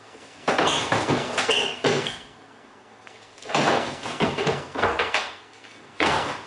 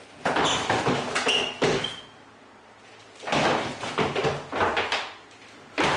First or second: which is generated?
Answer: first